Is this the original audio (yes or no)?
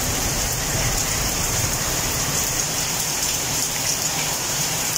no